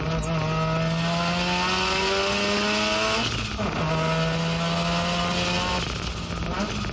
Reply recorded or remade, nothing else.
recorded